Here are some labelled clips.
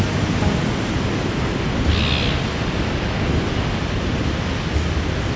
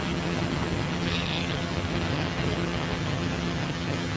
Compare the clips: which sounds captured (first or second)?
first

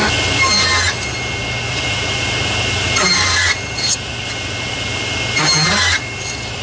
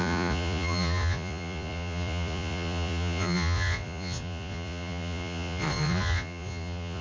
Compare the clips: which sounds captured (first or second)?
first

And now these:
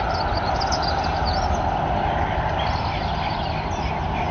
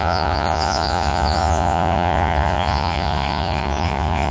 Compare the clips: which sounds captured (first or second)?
first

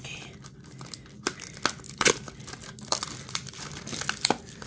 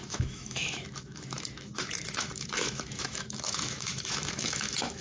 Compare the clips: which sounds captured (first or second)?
first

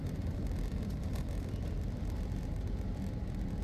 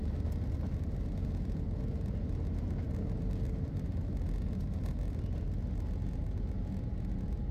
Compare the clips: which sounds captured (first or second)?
second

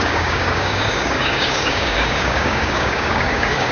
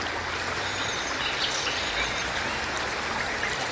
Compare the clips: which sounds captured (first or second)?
second